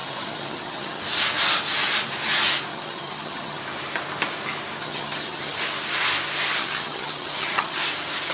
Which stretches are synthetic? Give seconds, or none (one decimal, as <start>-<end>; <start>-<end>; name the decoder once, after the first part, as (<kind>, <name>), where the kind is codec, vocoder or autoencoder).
0.0-1.0 (vocoder, HiFi-GAN); 2.7-3.6; 4.8-5.6; 6.6-7.8